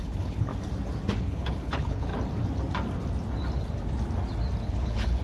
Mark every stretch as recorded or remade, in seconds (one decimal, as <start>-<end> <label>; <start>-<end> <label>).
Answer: 0.0-0.5 remade; 0.5-1.2 recorded; 1.2-2.1 remade; 2.1-4.7 recorded; 4.7-5.2 remade